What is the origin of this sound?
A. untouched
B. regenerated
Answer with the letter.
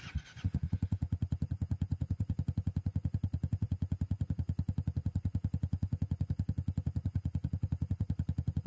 B